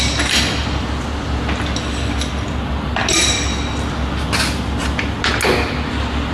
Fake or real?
real